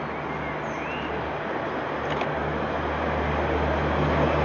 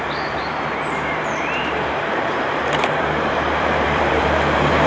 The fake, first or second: second